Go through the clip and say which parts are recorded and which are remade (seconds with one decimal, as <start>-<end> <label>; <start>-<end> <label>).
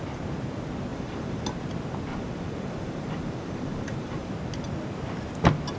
0.0-0.9 recorded; 0.9-1.4 remade; 1.4-2.1 recorded; 2.1-4.3 remade; 4.3-5.8 recorded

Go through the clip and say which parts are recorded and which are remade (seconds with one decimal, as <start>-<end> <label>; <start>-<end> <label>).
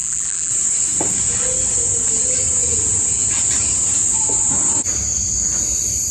0.0-0.5 remade; 0.5-6.1 recorded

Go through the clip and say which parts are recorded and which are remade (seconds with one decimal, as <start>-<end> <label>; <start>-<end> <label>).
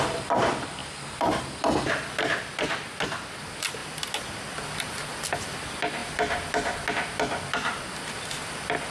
0.0-0.8 recorded; 0.8-1.4 remade; 1.4-8.9 recorded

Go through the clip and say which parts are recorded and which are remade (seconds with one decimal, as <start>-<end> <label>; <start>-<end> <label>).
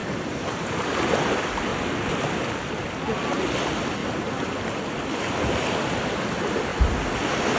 0.0-1.1 remade; 1.1-4.0 recorded; 4.0-4.5 remade; 4.5-7.6 recorded